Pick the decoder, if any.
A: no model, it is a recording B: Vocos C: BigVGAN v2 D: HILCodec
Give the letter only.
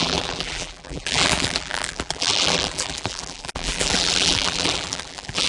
C